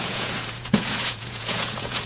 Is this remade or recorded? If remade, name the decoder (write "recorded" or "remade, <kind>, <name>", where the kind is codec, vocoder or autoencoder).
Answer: remade, vocoder, Vocos